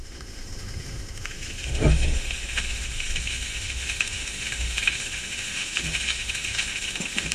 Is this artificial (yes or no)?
yes